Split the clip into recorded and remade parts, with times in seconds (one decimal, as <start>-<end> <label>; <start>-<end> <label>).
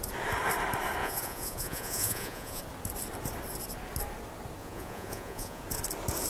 0.0-1.0 recorded; 1.0-2.6 remade; 2.6-4.6 recorded; 4.6-5.6 remade; 5.6-6.3 recorded